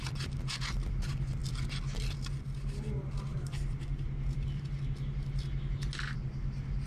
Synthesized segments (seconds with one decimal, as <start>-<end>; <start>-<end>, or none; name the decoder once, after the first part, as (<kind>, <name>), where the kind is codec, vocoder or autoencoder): 3.3-4.6 (vocoder, BigVGAN v2)